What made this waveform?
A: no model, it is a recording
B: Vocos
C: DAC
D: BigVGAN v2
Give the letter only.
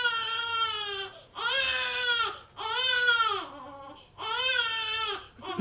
A